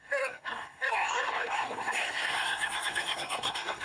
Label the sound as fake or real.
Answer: fake